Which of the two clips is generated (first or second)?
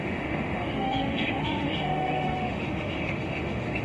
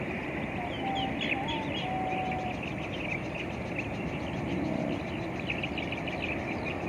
first